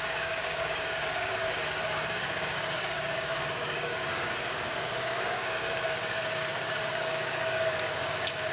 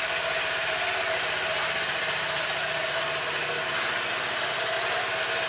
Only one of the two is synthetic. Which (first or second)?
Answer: first